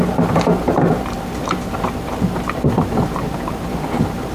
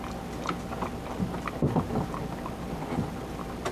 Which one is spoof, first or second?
first